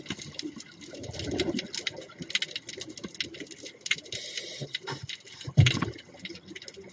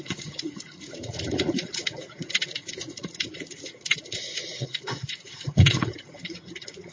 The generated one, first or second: second